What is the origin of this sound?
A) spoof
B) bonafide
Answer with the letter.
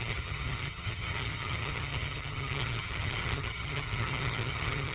A